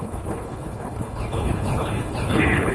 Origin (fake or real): fake